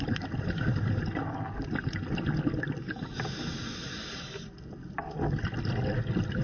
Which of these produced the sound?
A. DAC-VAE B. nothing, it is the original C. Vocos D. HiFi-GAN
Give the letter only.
B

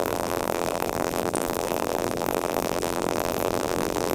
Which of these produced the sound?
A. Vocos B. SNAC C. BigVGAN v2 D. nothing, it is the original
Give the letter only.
C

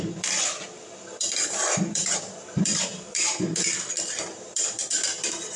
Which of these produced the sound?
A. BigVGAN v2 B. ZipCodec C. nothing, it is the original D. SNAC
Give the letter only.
A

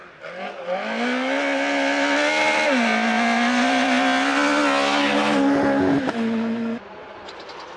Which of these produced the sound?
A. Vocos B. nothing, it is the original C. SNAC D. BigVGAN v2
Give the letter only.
B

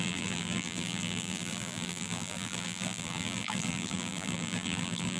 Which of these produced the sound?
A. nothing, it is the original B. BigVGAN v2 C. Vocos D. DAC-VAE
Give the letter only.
B